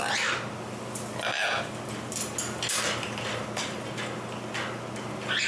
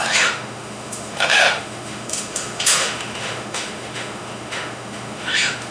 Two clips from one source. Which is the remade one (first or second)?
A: second